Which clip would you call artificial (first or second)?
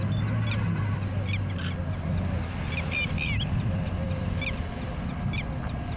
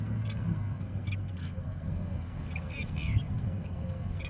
second